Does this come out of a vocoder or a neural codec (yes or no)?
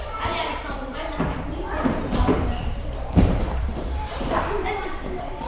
yes